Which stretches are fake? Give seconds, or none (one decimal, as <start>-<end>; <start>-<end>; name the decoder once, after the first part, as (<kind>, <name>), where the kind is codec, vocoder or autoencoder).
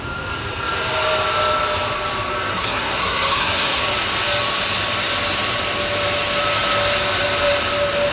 2.5-3.8 (codec, SNAC)